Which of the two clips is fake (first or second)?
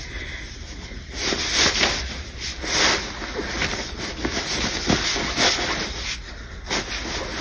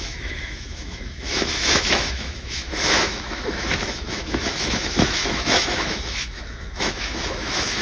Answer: second